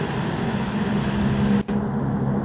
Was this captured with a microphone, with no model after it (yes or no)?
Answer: yes